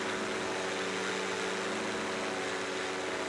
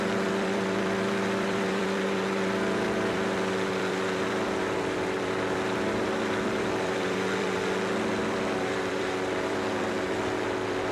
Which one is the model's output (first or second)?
second